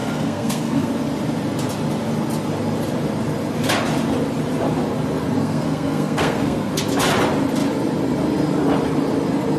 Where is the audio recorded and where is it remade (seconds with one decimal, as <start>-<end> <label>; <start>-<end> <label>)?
0.0-0.9 remade; 0.9-5.4 recorded; 5.4-6.7 remade; 6.7-9.6 recorded